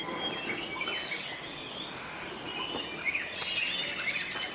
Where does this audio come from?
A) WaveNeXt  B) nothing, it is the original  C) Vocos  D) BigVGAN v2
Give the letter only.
B